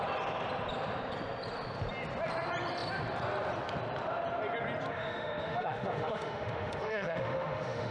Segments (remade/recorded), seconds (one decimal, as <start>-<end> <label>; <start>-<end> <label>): 0.0-4.9 recorded; 4.9-7.9 remade